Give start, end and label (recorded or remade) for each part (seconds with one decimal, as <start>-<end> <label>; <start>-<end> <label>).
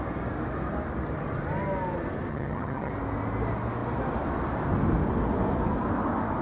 0.0-2.3 recorded; 2.3-2.9 remade; 2.9-6.4 recorded